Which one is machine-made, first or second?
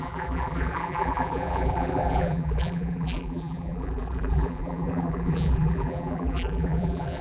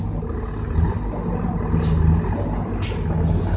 first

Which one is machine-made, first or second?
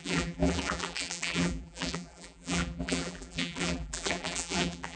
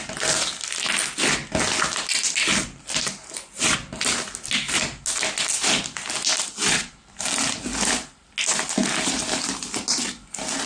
first